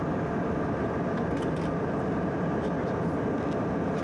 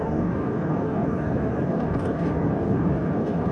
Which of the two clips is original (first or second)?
first